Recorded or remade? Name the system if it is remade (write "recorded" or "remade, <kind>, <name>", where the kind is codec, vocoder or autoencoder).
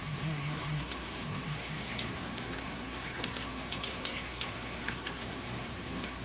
remade, codec, SNAC